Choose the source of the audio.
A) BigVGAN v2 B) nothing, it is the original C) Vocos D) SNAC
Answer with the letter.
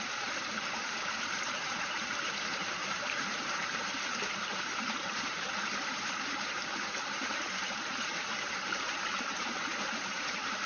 A